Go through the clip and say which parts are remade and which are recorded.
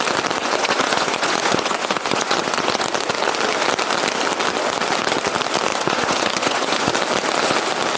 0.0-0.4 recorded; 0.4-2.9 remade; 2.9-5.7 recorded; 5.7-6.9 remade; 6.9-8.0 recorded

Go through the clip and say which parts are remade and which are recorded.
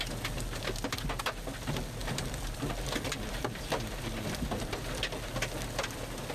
0.0-2.0 recorded; 2.0-3.6 remade; 3.6-6.3 recorded